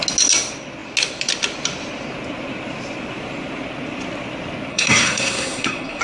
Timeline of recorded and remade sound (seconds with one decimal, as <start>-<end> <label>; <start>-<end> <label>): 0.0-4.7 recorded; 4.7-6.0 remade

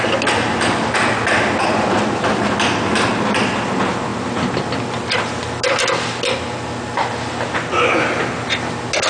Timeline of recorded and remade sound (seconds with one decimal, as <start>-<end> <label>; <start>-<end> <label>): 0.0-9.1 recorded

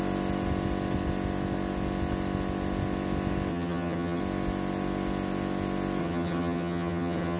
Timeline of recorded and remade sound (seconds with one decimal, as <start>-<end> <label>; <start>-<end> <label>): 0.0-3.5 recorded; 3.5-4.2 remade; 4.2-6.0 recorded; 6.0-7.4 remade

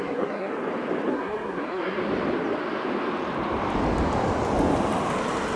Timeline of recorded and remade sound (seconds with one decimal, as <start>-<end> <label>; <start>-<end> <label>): 0.0-0.5 remade; 0.5-1.1 recorded; 1.1-2.0 remade; 2.0-5.6 recorded